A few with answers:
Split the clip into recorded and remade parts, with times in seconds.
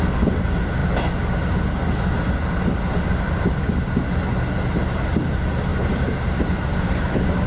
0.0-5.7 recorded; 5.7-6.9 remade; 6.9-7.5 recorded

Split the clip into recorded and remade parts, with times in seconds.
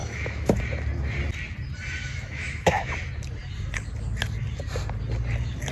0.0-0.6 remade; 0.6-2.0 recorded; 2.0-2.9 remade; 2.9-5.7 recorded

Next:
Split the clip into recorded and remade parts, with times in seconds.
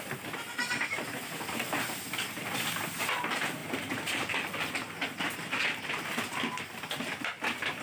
0.0-3.6 recorded; 3.6-4.7 remade; 4.7-7.8 recorded